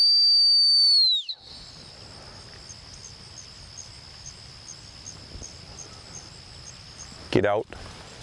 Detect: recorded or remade recorded